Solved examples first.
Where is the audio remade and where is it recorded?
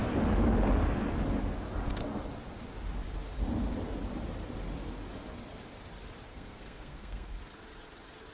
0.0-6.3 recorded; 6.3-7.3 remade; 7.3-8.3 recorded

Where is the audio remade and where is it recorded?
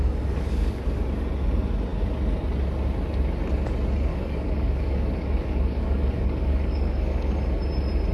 0.0-0.8 remade; 0.8-4.1 recorded; 4.1-7.3 remade; 7.3-8.1 recorded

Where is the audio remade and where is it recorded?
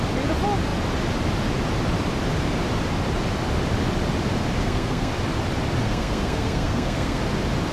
0.0-4.6 recorded; 4.6-5.1 remade; 5.1-5.8 recorded; 5.8-7.2 remade; 7.2-7.7 recorded